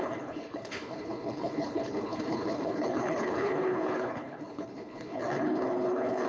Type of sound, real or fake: fake